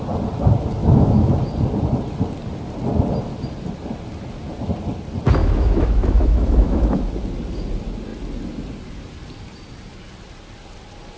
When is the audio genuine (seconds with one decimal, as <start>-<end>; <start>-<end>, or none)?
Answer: 0.0-0.8; 1.3-5.4; 7.0-11.2